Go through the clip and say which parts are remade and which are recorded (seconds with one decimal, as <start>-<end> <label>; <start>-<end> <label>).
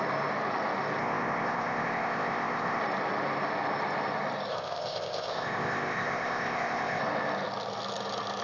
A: 0.0-1.0 recorded; 1.0-2.8 remade; 2.8-4.5 recorded; 4.5-7.0 remade; 7.0-8.4 recorded